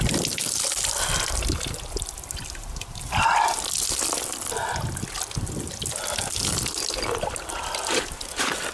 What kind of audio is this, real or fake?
real